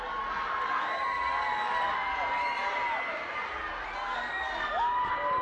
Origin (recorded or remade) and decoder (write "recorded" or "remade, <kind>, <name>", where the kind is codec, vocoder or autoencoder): recorded